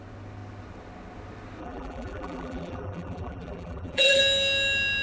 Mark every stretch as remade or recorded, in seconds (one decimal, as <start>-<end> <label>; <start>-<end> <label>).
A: 0.0-1.6 recorded; 1.6-4.2 remade; 4.2-5.0 recorded